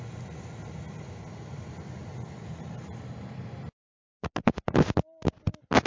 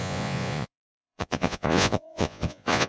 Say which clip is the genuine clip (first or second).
first